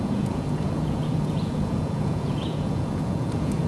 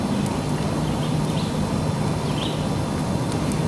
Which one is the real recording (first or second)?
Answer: second